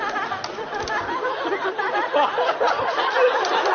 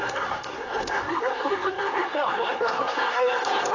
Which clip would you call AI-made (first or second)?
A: second